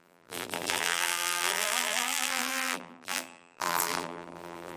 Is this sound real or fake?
fake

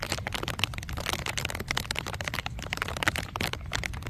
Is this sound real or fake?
real